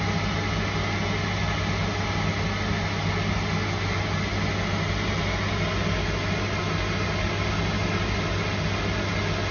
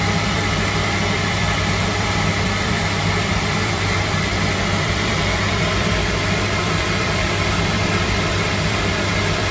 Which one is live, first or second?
first